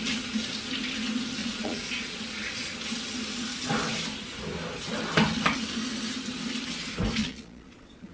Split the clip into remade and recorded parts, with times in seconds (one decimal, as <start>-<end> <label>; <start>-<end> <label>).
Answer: 0.0-1.4 recorded; 1.4-2.2 remade; 2.2-7.2 recorded; 7.2-8.1 remade